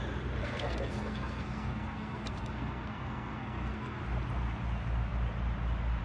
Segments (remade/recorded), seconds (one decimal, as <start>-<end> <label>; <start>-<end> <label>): 0.0-0.4 recorded; 0.4-4.0 remade; 4.0-6.0 recorded